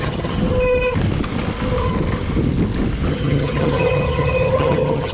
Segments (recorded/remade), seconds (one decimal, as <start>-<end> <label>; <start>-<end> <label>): 0.0-0.4 remade; 0.4-3.1 recorded; 3.1-5.1 remade